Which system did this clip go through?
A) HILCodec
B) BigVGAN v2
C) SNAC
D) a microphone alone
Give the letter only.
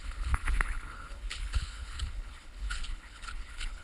A